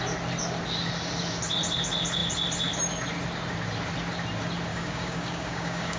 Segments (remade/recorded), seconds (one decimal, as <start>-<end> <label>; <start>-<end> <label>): 0.0-4.7 recorded; 4.7-6.0 remade